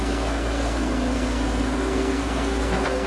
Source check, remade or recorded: remade